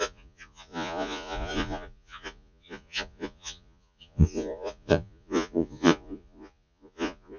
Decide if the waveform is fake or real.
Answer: fake